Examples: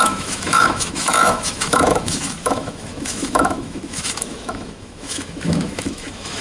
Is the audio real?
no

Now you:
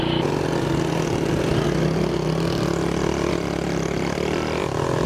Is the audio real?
yes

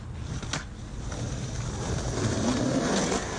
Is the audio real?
yes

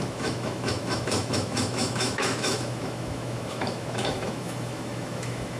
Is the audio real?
no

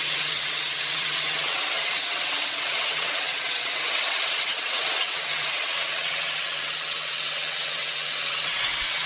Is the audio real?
no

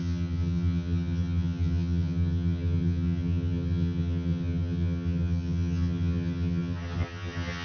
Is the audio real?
no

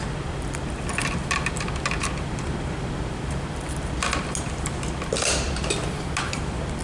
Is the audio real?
yes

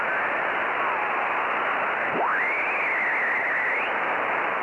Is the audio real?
yes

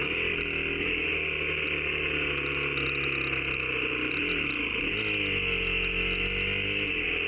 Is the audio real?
yes